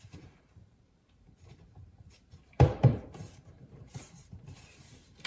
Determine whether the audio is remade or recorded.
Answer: remade